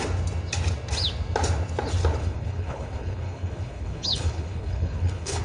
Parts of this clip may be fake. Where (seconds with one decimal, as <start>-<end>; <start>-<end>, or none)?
2.2-5.4